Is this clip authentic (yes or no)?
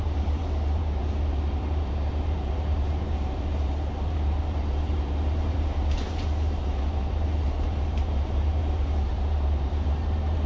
no